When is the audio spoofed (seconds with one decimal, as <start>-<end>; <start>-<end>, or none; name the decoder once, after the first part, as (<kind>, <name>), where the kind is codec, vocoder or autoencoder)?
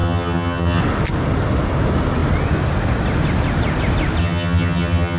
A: 0.0-0.8 (vocoder, HiFi-GAN); 4.2-5.2